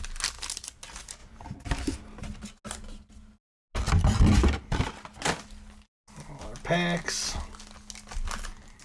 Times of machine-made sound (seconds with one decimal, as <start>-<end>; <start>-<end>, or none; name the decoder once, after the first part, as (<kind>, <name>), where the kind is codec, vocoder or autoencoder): none